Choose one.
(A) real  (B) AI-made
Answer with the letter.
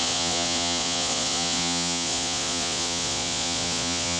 B